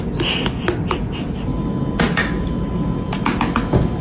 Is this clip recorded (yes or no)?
yes